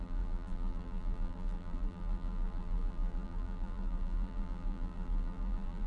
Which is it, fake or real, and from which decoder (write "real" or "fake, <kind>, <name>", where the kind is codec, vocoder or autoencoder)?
fake, vocoder, BigVGAN v2